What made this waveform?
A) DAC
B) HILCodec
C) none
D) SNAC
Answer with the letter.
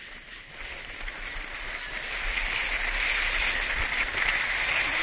C